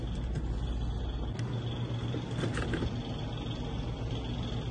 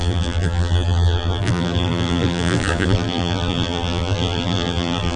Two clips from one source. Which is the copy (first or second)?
second